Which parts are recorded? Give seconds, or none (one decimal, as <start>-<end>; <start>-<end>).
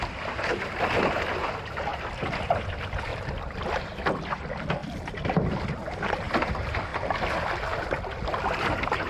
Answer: 0.0-1.9; 2.7-3.1; 4.2-9.1